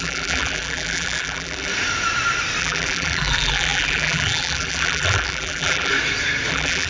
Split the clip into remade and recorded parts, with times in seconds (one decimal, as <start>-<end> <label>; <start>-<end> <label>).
0.0-1.7 remade; 1.7-2.6 recorded; 2.6-5.9 remade; 5.9-6.5 recorded; 6.5-6.9 remade